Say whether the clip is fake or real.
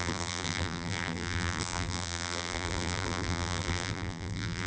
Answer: fake